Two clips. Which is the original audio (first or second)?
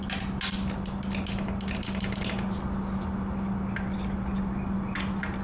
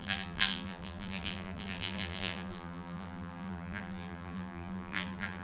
first